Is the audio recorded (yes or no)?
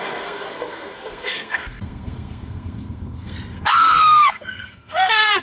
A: no